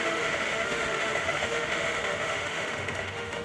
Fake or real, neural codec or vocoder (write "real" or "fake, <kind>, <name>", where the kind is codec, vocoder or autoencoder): fake, autoencoder, DAC-VAE